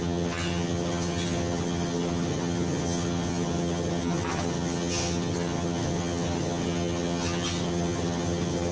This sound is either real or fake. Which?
fake